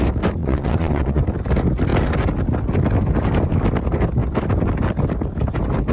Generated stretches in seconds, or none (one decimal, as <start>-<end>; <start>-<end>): 0.4-1.2